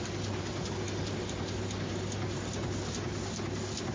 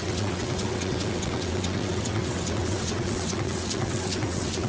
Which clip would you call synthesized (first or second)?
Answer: second